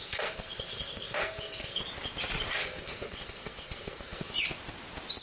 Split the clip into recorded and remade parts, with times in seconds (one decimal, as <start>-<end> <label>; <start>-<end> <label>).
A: 0.0-1.8 remade; 1.8-2.6 recorded; 2.6-4.3 remade; 4.3-5.2 recorded